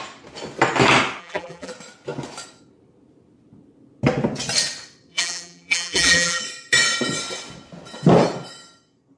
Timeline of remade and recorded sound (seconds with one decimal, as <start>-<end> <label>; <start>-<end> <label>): 0.0-1.2 recorded; 1.2-1.7 remade; 1.7-5.1 recorded; 5.1-6.4 remade; 6.4-9.2 recorded